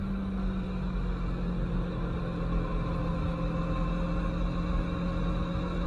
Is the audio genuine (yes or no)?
yes